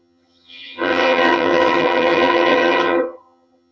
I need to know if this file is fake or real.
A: fake